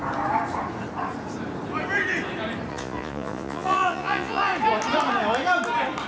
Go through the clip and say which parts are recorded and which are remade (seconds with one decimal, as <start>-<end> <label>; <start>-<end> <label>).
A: 0.0-2.7 recorded; 2.7-4.5 remade; 4.5-6.1 recorded